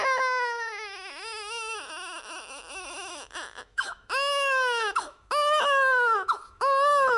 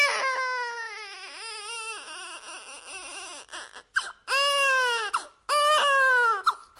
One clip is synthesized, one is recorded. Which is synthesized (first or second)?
first